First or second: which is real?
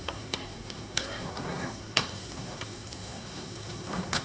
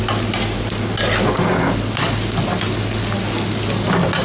second